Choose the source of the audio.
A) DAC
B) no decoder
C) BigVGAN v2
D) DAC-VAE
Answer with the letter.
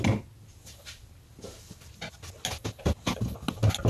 B